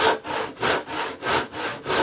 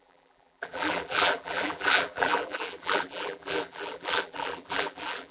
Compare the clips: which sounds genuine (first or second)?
first